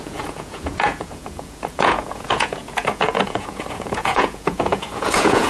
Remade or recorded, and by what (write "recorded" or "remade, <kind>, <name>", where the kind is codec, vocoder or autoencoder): remade, vocoder, Vocos